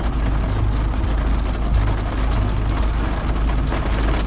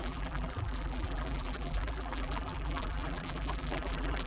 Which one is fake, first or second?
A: second